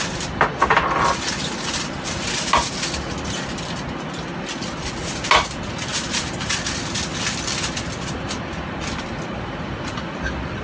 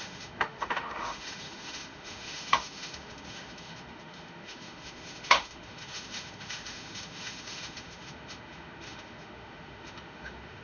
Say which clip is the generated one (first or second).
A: second